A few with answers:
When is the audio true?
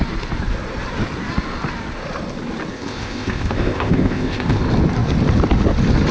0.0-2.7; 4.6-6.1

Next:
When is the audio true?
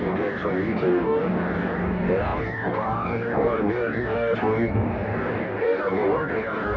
none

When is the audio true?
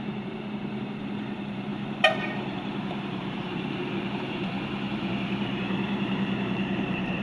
none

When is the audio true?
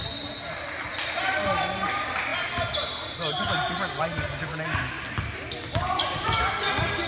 0.0-7.1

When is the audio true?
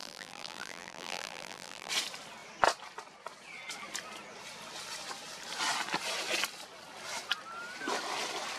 1.9-8.6